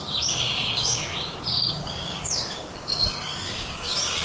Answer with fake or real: fake